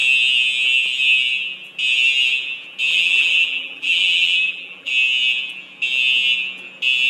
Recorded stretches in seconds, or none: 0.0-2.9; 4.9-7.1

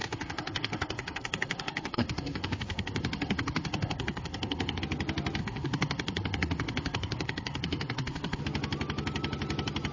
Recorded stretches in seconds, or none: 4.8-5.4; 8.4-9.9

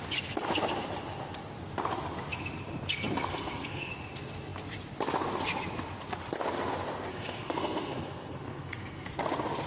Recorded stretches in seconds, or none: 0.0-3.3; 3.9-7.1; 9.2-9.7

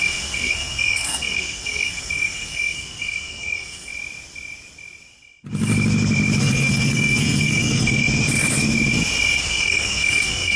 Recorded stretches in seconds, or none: 3.9-6.4; 8.0-9.4

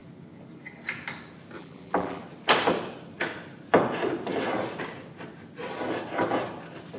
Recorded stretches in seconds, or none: 0.0-1.6; 2.2-7.0

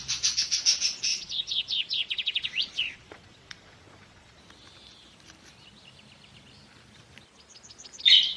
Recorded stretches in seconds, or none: 0.0-1.1; 4.4-8.4

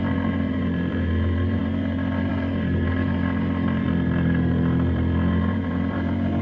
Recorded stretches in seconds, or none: none

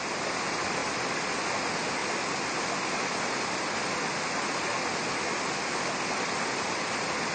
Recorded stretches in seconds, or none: 0.0-7.3